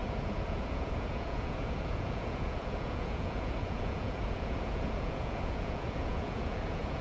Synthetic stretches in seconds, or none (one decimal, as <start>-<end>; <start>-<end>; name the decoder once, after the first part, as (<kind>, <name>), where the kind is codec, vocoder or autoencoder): 0.0-7.0 (vocoder, Vocos)